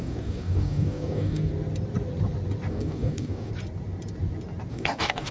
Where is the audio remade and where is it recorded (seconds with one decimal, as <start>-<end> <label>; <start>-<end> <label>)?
0.0-1.5 remade; 1.5-2.7 recorded; 2.7-3.5 remade; 3.5-4.7 recorded; 4.7-5.3 remade